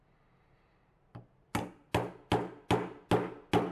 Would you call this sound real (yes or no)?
yes